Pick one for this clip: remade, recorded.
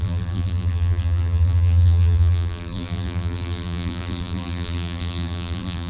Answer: remade